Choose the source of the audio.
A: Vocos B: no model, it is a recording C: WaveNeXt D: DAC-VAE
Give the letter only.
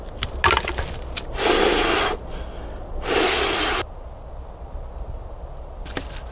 B